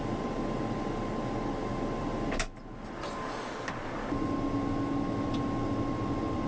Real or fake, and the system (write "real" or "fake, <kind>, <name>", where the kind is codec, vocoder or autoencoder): real